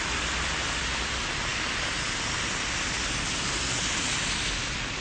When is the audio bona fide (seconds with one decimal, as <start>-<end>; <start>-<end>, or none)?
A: 0.0-5.0